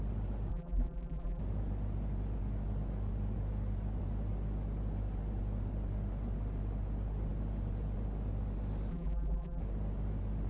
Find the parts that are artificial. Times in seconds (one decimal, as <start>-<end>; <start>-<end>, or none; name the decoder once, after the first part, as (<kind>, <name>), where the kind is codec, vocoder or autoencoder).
0.5-1.4 (vocoder, BigVGAN v2); 8.9-9.6